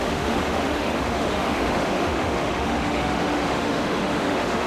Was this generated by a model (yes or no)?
yes